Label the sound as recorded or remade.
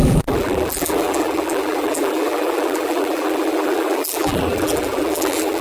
remade